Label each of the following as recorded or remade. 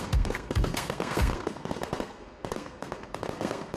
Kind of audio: remade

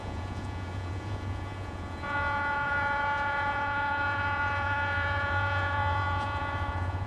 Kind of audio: remade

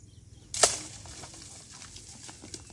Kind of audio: recorded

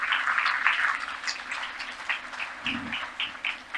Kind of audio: recorded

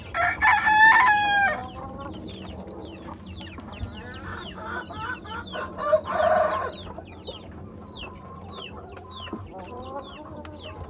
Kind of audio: recorded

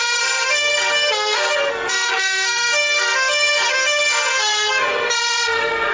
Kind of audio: remade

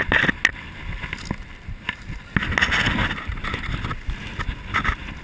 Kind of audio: recorded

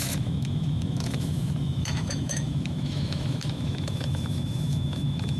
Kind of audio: remade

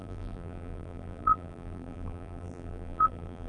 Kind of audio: remade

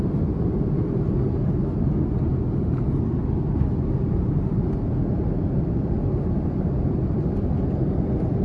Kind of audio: recorded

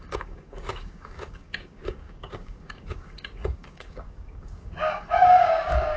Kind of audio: remade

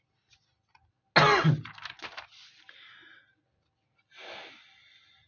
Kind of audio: recorded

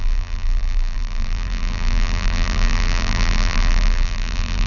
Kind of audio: remade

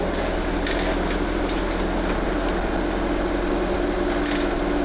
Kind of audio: recorded